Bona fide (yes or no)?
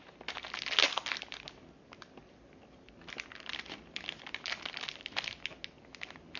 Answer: yes